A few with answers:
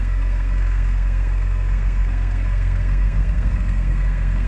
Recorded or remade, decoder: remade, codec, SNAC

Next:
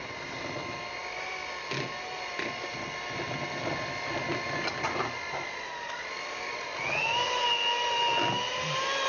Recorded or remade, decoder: recorded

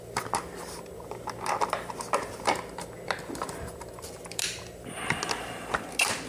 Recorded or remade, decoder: recorded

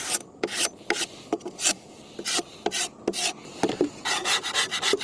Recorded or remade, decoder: recorded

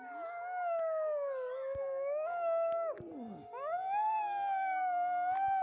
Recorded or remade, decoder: recorded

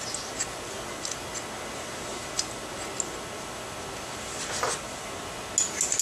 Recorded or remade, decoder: recorded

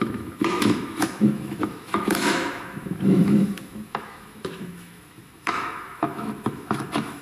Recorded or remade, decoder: remade, autoencoder, DAC-VAE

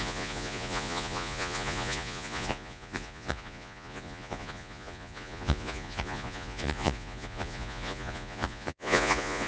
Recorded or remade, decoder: remade, vocoder, Vocos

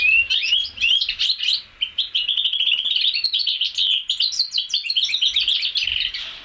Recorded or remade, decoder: recorded